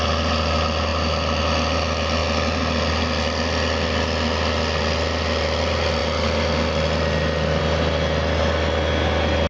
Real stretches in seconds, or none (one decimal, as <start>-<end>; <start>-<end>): 0.0-9.5